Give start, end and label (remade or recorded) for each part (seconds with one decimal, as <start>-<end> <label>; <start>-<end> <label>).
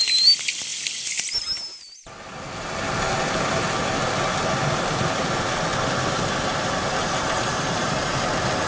0.0-7.0 recorded; 7.0-7.9 remade; 7.9-8.7 recorded